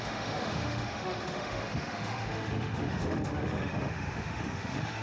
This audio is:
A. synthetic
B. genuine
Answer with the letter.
A